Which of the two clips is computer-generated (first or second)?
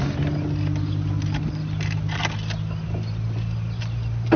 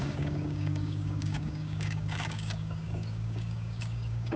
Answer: second